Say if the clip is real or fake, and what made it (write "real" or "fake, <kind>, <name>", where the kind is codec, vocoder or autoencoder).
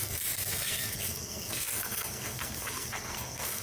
fake, codec, SNAC